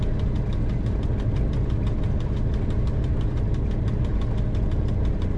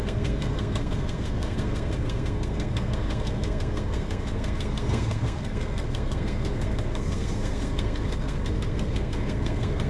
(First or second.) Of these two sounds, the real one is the first